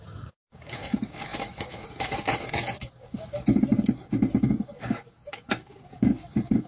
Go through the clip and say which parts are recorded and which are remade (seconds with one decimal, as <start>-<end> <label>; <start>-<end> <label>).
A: 0.0-6.7 remade